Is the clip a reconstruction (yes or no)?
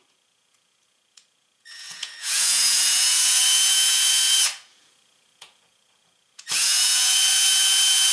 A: yes